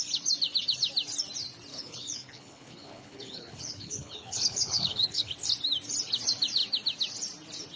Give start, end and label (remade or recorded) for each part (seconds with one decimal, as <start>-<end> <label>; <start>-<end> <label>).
0.0-1.7 recorded; 1.7-5.3 remade; 5.3-7.8 recorded